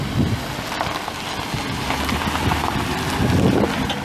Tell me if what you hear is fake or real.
real